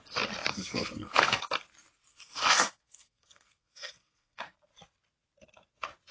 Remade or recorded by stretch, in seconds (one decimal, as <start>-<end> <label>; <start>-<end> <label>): 0.0-0.5 recorded; 0.5-1.5 remade; 1.5-2.1 recorded; 2.1-4.5 remade; 4.5-6.1 recorded